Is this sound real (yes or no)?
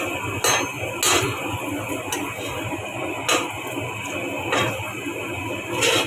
yes